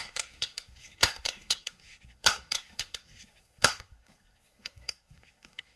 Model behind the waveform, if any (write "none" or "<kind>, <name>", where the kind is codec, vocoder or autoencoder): codec, SNAC